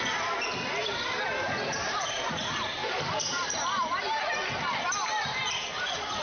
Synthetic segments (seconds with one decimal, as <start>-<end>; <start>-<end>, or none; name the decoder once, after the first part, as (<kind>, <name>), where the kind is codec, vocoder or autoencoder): 0.8-2.3 (vocoder, BigVGAN v2); 2.8-4.1